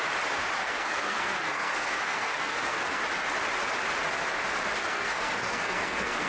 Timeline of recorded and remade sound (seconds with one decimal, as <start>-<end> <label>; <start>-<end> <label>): 0.0-0.6 recorded; 0.6-3.0 remade; 3.0-4.8 recorded; 4.8-6.3 remade